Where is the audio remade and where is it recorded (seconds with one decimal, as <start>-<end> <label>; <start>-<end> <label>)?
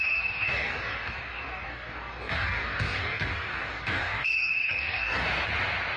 0.0-5.2 remade; 5.2-6.0 recorded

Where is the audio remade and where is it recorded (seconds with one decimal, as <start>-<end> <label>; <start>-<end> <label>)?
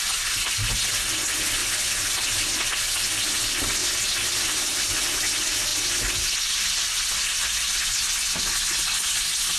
0.0-9.6 recorded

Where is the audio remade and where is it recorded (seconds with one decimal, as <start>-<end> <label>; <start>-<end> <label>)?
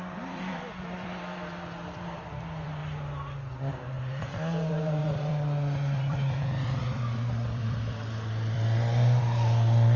0.0-2.8 remade; 2.8-3.7 recorded; 3.7-10.0 remade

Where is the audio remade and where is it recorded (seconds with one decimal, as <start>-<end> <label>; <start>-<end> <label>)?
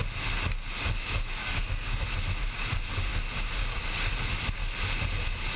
0.0-1.4 recorded; 1.4-2.0 remade; 2.0-3.1 recorded; 3.1-3.8 remade; 3.8-5.6 recorded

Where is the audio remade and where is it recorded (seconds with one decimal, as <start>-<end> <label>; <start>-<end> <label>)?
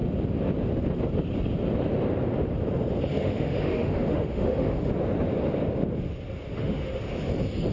0.0-3.1 recorded; 3.1-4.9 remade; 4.9-6.5 recorded; 6.5-7.0 remade; 7.0-7.7 recorded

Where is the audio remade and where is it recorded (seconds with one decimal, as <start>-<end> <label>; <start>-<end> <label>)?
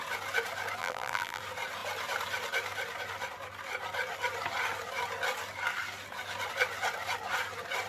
0.0-0.8 recorded; 0.8-1.4 remade; 1.4-7.9 recorded